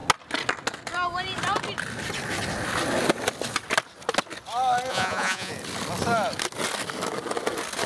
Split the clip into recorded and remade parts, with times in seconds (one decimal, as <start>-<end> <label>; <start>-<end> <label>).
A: 0.0-4.9 recorded; 4.9-5.5 remade; 5.5-7.9 recorded